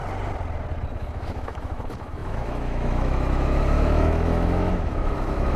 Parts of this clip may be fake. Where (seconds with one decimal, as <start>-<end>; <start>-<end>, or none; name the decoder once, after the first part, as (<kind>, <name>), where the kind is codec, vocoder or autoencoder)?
0.9-5.6 (autoencoder, DAC-VAE)